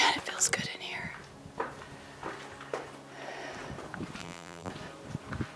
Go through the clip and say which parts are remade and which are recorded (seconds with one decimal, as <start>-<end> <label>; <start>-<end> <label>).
0.0-4.2 recorded; 4.2-4.7 remade; 4.7-5.6 recorded